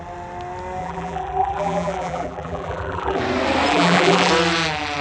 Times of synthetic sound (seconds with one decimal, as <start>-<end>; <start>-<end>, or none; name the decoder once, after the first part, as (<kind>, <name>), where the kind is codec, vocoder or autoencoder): 0.8-3.2 (vocoder, BigVGAN v2); 3.7-4.3